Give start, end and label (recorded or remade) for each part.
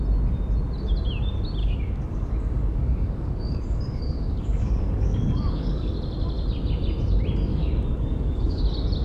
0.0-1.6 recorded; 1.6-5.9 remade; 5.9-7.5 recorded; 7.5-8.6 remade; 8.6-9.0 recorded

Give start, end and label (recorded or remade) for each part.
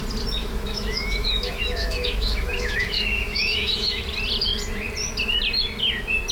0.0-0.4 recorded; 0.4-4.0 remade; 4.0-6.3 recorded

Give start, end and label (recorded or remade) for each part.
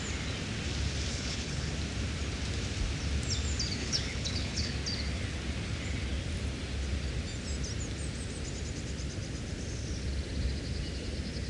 0.0-1.1 recorded; 1.1-1.7 remade; 1.7-3.8 recorded; 3.8-4.7 remade; 4.7-11.5 recorded